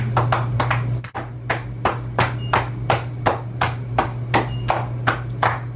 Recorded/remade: recorded